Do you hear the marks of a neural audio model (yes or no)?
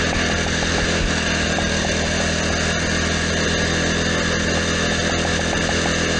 no